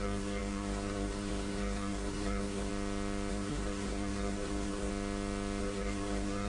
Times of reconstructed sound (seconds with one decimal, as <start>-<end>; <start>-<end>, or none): 0.0-2.7; 3.3-4.9; 5.6-6.5